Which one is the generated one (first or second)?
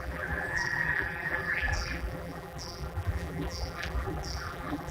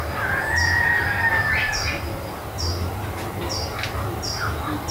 first